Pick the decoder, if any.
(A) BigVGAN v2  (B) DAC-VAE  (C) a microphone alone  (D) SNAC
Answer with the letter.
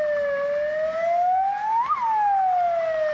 C